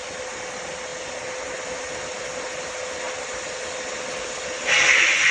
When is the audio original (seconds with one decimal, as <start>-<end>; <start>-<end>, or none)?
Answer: 0.0-5.3